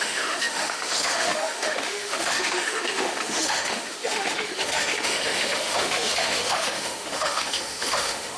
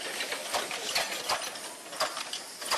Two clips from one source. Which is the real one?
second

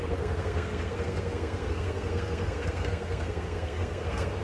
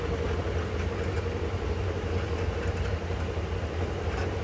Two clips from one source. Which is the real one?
second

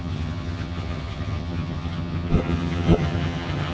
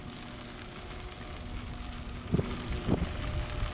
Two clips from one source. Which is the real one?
second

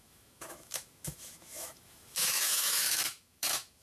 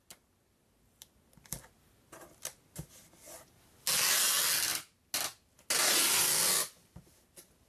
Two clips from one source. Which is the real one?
second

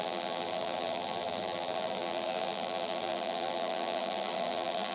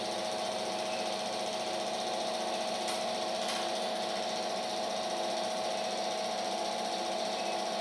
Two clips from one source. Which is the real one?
second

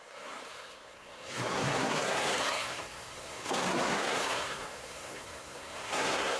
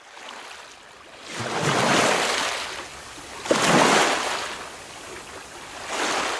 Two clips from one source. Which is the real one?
second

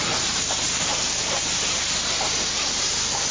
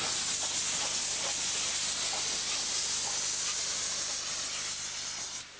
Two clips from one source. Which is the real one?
second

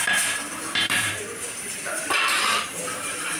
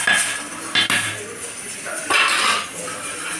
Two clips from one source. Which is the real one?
second